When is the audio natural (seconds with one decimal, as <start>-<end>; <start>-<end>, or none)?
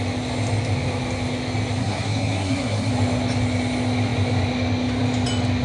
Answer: 0.0-1.8; 2.9-5.6